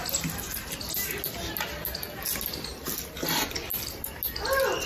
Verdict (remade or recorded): recorded